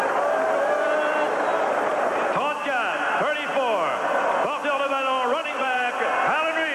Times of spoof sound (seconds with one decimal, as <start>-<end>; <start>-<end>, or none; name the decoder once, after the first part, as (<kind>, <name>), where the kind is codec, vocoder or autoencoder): 1.5-2.0 (vocoder, BigVGAN v2); 5.4-5.9